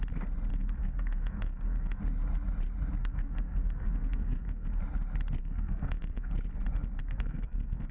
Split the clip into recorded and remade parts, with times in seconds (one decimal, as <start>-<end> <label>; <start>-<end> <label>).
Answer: 0.0-0.5 recorded; 0.5-2.0 remade; 2.0-3.0 recorded; 3.0-4.8 remade; 4.8-5.4 recorded; 5.4-6.3 remade; 6.3-7.0 recorded; 7.0-7.9 remade